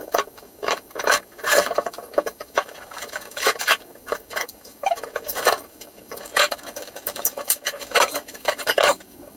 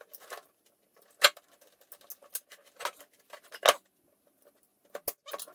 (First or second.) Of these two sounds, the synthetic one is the first